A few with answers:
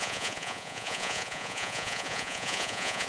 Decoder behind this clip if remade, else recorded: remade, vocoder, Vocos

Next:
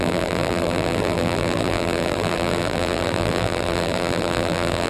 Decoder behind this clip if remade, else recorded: remade, vocoder, BigVGAN v2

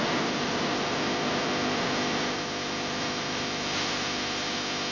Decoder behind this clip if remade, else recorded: recorded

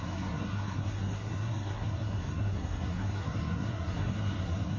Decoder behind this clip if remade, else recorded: remade, codec, SNAC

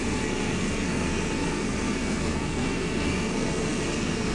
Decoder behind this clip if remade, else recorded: remade, codec, SNAC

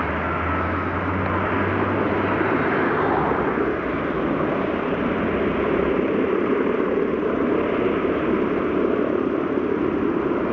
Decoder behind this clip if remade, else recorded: recorded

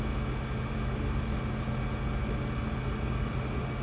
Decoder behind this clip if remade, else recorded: recorded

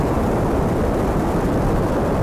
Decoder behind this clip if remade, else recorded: recorded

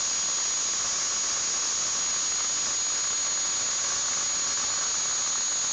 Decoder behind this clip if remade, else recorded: recorded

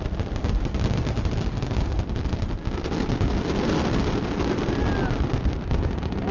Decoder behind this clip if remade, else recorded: recorded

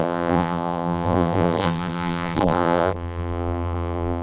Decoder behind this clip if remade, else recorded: remade, vocoder, BigVGAN v2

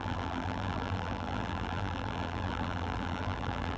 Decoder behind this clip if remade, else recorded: remade, vocoder, BigVGAN v2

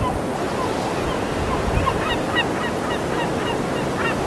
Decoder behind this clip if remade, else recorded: recorded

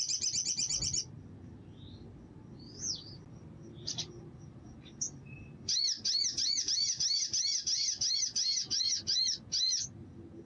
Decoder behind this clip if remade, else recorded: recorded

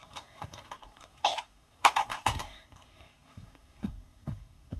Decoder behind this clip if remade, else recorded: remade, codec, SNAC